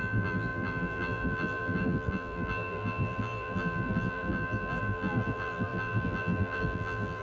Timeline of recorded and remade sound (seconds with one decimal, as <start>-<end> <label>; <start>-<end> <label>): 0.0-7.2 remade